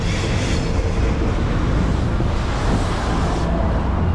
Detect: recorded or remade recorded